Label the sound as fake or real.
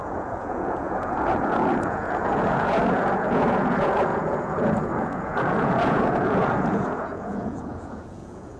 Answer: fake